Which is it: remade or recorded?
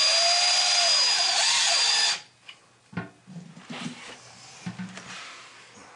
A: recorded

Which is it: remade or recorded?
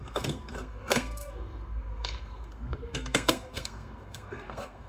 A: remade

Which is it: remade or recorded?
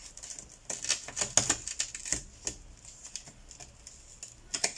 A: recorded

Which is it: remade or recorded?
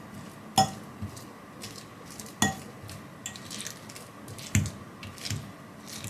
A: recorded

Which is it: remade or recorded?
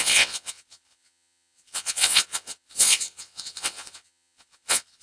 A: remade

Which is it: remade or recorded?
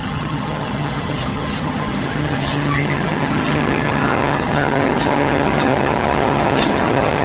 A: remade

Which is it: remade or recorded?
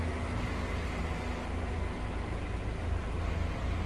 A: recorded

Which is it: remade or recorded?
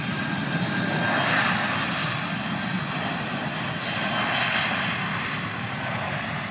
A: recorded